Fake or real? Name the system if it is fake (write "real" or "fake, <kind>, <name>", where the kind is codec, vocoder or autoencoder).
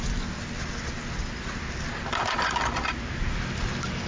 real